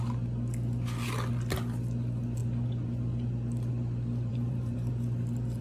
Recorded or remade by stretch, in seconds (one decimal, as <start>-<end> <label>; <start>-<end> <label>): 0.0-4.3 recorded; 4.3-4.9 remade; 4.9-5.6 recorded